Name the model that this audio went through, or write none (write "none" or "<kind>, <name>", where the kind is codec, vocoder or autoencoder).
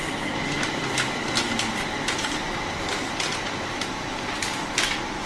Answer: none